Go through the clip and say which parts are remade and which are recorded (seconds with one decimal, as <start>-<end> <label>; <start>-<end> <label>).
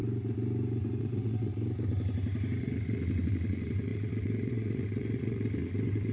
0.0-1.0 recorded; 1.0-1.5 remade; 1.5-2.6 recorded; 2.6-6.1 remade